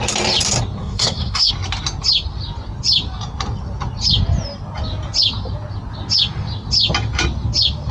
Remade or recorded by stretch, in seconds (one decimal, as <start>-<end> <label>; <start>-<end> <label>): 0.0-0.8 recorded; 0.8-1.5 remade; 1.5-7.9 recorded